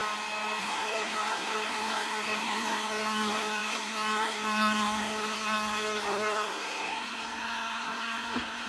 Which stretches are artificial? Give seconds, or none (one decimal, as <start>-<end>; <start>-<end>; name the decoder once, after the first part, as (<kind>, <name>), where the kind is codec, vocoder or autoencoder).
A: 0.6-8.7 (codec, SNAC)